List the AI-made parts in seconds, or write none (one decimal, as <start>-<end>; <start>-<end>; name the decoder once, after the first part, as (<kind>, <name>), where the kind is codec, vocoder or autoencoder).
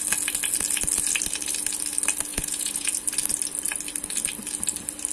2.3-2.9 (vocoder, Vocos)